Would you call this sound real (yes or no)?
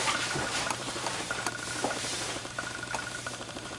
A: no